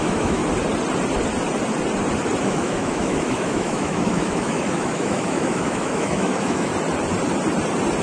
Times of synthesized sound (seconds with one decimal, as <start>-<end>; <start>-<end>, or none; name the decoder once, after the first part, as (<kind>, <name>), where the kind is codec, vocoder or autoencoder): 0.0-0.4 (autoencoder, DAC-VAE); 2.4-6.7